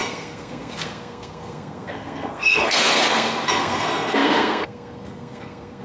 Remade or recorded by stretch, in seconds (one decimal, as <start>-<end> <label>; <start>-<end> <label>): 0.0-5.8 remade